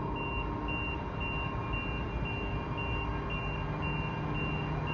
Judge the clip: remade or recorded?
recorded